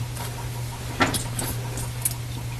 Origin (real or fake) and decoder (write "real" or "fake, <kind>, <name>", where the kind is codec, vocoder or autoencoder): real